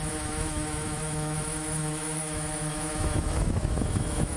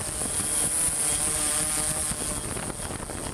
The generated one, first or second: first